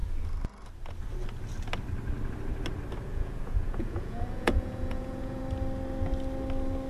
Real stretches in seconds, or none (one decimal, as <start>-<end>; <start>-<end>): 0.0-3.1; 5.4-6.9